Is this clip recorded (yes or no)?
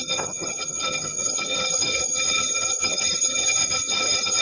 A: no